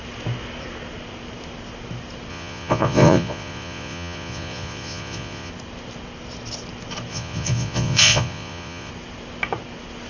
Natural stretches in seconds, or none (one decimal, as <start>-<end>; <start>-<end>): 0.0-2.3; 5.5-7.1; 8.9-10.1